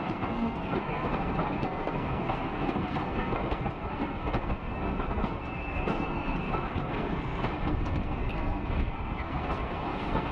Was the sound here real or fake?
fake